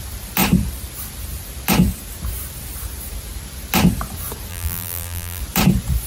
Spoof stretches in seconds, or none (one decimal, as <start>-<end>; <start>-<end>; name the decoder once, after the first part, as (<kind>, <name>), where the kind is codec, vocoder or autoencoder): 4.5-5.4 (vocoder, BigVGAN v2)